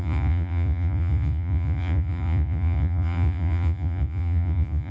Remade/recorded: remade